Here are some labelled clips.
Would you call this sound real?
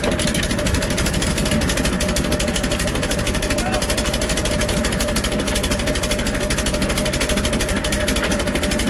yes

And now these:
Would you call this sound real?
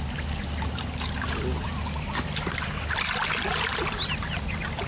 yes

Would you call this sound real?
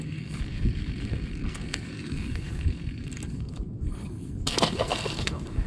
no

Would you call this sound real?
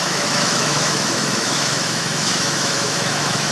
no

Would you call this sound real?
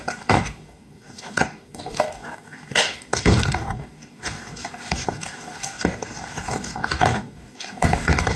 no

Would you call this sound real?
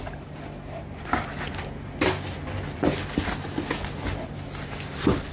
yes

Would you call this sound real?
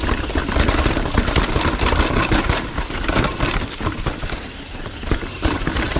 yes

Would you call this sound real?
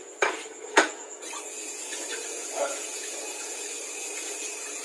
no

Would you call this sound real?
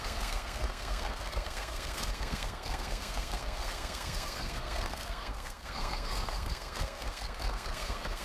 no